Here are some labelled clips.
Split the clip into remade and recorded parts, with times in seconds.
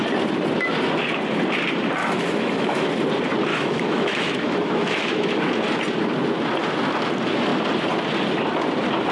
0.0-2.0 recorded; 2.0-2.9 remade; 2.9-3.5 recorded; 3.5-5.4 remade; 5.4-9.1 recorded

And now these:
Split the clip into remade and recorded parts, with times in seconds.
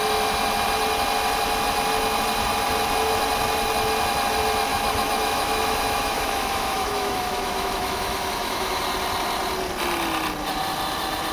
0.0-4.7 recorded; 4.7-8.8 remade; 8.8-11.3 recorded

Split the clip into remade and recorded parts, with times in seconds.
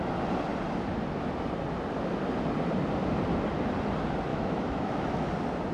0.0-4.3 recorded; 4.3-5.3 remade; 5.3-5.7 recorded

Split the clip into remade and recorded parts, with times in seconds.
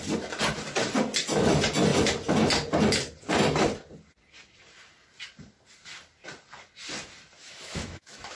0.0-7.4 recorded; 7.4-8.4 remade